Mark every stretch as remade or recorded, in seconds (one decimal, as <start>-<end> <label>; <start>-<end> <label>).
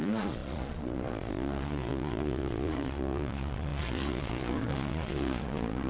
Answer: 0.0-5.9 remade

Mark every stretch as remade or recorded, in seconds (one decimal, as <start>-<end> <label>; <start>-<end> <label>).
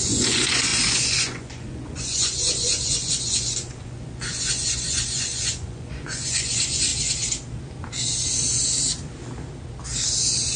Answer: 0.0-6.9 remade; 6.9-10.6 recorded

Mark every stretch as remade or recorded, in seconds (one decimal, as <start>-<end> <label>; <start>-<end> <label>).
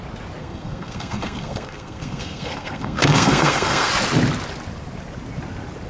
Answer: 0.0-0.4 recorded; 0.4-3.9 remade; 3.9-5.9 recorded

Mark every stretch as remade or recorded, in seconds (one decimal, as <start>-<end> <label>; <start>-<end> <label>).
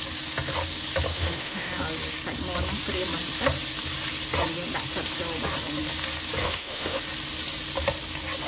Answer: 0.0-1.1 recorded; 1.1-1.7 remade; 1.7-6.4 recorded; 6.4-7.0 remade; 7.0-8.5 recorded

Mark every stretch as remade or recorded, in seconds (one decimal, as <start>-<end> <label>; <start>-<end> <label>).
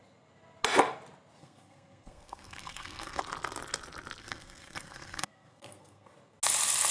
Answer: 0.0-1.4 recorded; 1.4-3.2 remade; 3.2-4.2 recorded; 4.2-6.1 remade; 6.1-6.9 recorded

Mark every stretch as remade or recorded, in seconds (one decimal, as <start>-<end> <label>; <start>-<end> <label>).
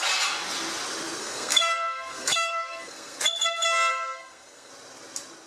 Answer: 0.0-1.2 recorded; 1.2-3.2 remade; 3.2-3.9 recorded; 3.9-4.7 remade; 4.7-5.5 recorded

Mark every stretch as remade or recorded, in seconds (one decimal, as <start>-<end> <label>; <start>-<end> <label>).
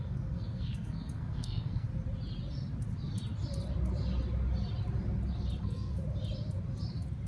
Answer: 0.0-1.9 remade; 1.9-5.6 recorded; 5.6-6.0 remade; 6.0-7.3 recorded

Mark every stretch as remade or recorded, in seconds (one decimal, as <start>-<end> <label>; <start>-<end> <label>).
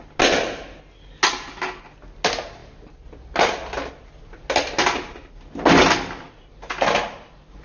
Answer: 0.0-7.6 recorded